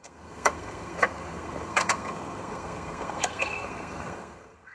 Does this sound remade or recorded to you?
remade